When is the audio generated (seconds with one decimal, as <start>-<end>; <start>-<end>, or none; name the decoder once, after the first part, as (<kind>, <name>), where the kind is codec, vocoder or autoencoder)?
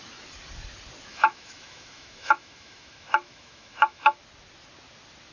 1.1-4.2 (autoencoder, DAC-VAE)